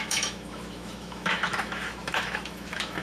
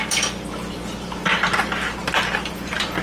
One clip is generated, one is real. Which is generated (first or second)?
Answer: first